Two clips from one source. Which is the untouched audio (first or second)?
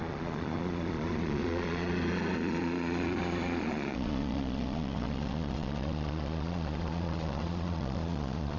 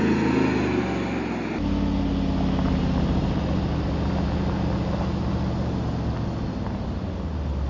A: second